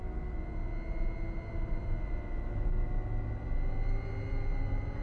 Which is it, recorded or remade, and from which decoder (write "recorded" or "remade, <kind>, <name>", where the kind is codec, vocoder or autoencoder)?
recorded